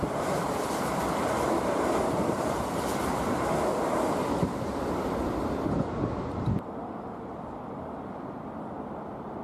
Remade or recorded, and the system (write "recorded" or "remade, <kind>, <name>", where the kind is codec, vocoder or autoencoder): remade, vocoder, BigVGAN v2